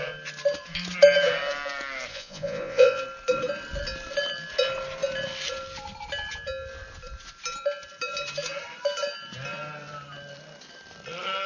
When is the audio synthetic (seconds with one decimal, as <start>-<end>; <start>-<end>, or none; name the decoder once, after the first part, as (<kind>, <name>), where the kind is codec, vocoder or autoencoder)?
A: 2.1-3.0 (vocoder, Vocos)